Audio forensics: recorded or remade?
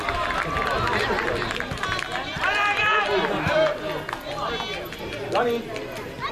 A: recorded